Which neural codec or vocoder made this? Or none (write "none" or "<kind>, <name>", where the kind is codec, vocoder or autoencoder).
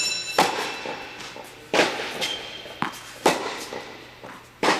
none